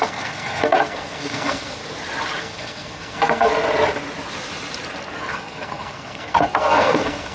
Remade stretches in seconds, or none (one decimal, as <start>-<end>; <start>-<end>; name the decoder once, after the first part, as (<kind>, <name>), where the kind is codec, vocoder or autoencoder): 0.0-1.8 (codec, SNAC); 2.4-3.5; 5.3-7.3